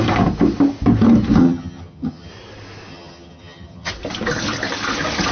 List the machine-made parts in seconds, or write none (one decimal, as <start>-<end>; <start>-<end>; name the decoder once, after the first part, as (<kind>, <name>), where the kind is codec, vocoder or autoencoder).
1.4-2.3 (vocoder, HiFi-GAN); 2.9-3.9